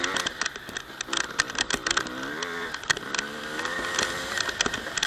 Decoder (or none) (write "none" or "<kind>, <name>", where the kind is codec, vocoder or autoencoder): none